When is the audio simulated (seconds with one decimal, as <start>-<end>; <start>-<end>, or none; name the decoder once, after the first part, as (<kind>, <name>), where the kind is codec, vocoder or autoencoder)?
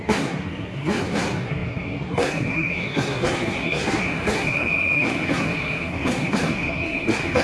0.0-7.4 (codec, SNAC)